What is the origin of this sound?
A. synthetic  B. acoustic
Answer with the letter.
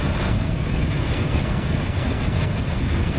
A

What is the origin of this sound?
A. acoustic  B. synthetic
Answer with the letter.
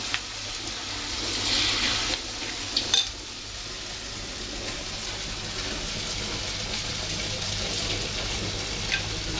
A